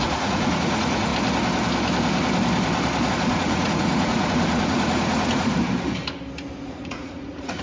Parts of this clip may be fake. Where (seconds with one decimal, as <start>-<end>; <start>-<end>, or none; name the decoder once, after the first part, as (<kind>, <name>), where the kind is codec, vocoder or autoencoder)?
0.0-1.1 (vocoder, Vocos); 3.1-5.6; 6.6-7.6